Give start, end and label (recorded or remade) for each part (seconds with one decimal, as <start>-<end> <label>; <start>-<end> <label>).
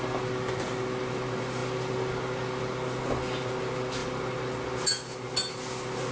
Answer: 0.0-6.1 recorded